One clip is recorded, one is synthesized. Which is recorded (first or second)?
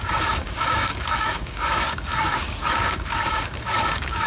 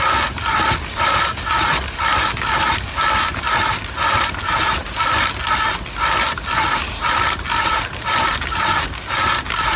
second